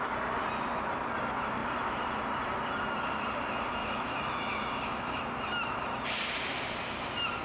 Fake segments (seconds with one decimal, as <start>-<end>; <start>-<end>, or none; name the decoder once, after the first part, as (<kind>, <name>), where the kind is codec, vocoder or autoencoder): 3.8-5.2 (autoencoder, DAC-VAE)